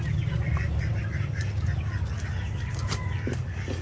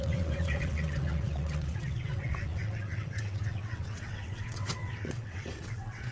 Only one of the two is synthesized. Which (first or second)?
second